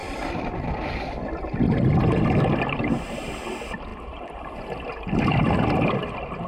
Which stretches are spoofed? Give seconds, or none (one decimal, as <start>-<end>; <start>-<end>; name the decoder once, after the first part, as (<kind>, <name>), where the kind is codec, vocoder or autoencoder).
0.0-1.0 (vocoder, BigVGAN v2)